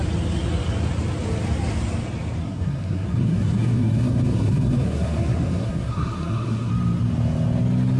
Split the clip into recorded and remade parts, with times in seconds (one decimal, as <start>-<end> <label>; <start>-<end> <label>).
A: 0.0-2.4 recorded; 2.4-6.7 remade; 6.7-8.0 recorded